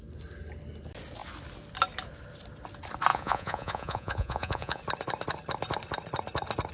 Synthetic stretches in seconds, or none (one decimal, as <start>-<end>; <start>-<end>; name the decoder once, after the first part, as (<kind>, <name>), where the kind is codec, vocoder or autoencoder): 3.1-4.8 (vocoder, Vocos)